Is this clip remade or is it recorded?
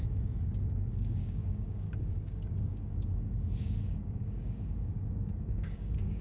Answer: remade